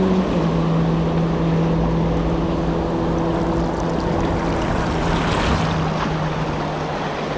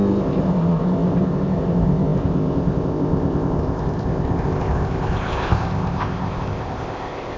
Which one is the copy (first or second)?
second